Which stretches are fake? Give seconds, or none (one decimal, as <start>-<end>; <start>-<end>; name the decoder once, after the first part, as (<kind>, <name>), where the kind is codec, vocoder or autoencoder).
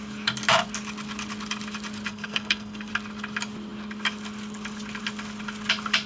2.1-2.9 (codec, SNAC)